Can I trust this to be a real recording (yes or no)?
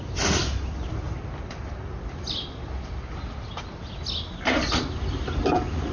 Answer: yes